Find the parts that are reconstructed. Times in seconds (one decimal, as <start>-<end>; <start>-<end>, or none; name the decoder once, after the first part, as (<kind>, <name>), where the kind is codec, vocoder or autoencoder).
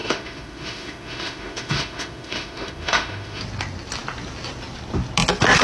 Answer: 0.0-3.4 (autoencoder, DAC-VAE)